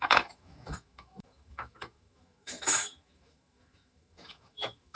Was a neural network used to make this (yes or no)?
yes